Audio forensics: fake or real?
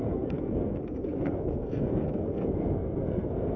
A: fake